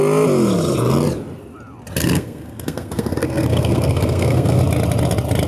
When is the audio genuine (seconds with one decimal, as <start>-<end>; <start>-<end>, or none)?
0.0-2.0; 4.6-5.5